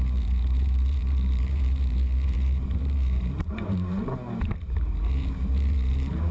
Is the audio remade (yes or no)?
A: yes